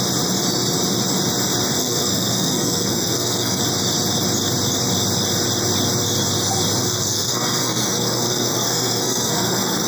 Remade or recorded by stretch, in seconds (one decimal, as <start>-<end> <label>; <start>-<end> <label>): 0.0-1.8 recorded; 1.8-3.6 remade; 3.6-6.8 recorded; 6.8-9.9 remade